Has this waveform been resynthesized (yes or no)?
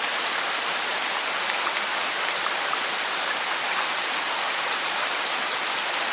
yes